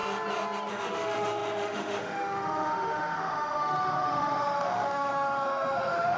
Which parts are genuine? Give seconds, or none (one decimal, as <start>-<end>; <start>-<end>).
0.0-0.7